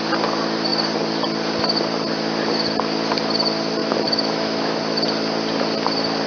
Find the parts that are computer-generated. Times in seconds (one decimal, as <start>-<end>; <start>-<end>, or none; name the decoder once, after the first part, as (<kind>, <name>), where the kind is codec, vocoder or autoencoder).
3.8-4.8 (autoencoder, DAC-VAE)